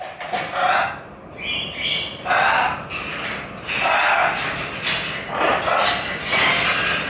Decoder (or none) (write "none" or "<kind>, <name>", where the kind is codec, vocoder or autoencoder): none